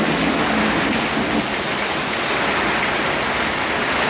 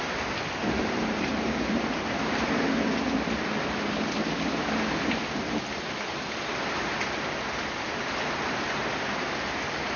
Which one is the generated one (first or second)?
second